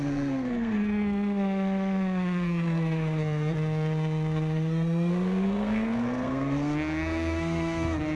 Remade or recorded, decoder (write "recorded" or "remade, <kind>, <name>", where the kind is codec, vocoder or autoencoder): remade, codec, SNAC